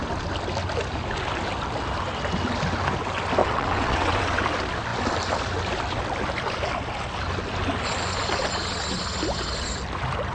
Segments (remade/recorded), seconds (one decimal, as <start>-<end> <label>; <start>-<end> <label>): 0.0-3.4 recorded; 3.4-4.4 remade; 4.4-10.3 recorded